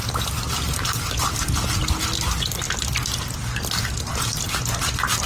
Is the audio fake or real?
real